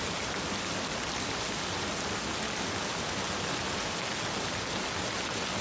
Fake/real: real